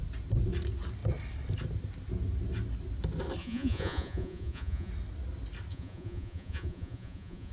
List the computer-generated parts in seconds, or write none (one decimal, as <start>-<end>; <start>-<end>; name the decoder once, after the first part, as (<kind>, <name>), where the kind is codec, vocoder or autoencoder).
3.4-4.9 (vocoder, Vocos); 5.7-7.5